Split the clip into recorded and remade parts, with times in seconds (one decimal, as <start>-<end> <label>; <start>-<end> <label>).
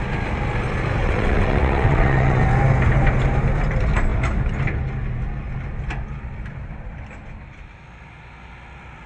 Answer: 0.0-1.0 recorded; 1.0-2.4 remade; 2.4-9.1 recorded